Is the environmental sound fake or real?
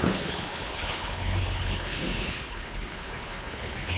fake